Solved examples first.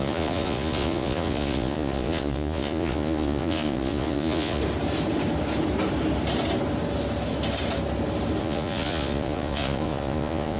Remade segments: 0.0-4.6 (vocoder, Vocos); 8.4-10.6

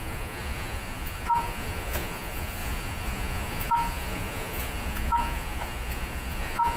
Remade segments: 0.0-6.8 (vocoder, Vocos)

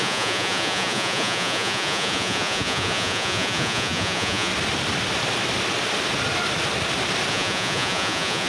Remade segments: 0.0-4.5 (vocoder, Vocos); 7.3-8.5

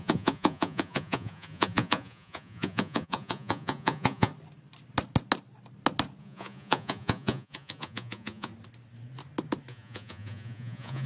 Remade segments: 0.0-4.3 (vocoder, Vocos); 6.2-8.5; 9.7-11.1

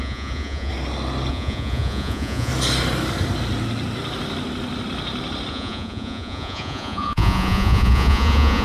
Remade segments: 0.0-0.7 (vocoder, Vocos); 1.3-2.5; 5.5-8.6